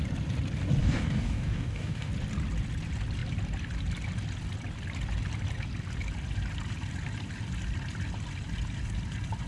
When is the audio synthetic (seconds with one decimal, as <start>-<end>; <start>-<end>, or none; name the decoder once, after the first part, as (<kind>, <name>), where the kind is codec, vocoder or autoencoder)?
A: 0.8-2.1 (codec, DAC)